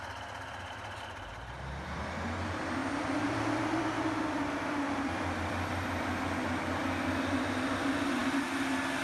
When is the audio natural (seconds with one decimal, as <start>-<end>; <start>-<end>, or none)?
0.0-2.8; 6.0-9.0